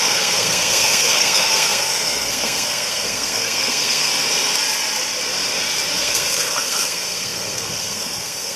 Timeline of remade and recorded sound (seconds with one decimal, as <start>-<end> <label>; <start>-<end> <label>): 0.0-4.1 remade; 4.1-6.0 recorded; 6.0-8.6 remade